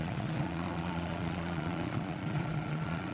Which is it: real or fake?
fake